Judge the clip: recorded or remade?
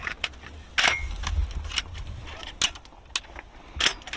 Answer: recorded